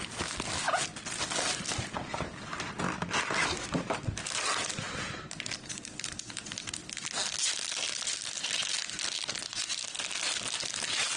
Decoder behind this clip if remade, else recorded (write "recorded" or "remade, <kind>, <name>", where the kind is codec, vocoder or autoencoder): recorded